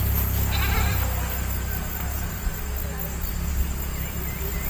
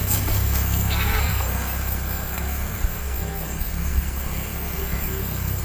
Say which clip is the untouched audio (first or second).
first